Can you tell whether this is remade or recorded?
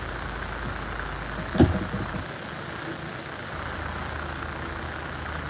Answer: recorded